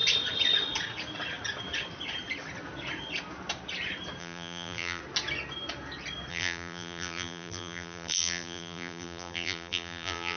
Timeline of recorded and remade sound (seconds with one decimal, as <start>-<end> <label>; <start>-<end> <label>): 0.0-4.2 recorded; 4.2-5.0 remade; 5.0-6.3 recorded; 6.3-10.4 remade